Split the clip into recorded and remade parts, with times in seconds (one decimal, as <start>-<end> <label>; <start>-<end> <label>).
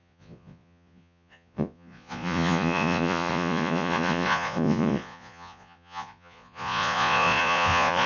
0.0-8.1 remade